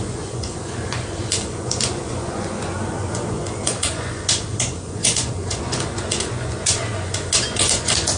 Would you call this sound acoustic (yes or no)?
no